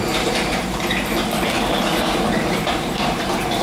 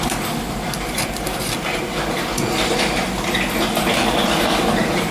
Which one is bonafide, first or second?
second